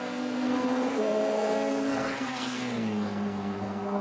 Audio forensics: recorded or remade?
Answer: remade